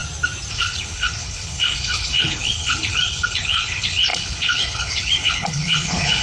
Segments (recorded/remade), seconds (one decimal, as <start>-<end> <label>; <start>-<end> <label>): 0.0-0.5 recorded; 0.5-6.2 remade